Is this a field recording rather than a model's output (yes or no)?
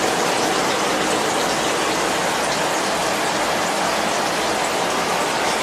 yes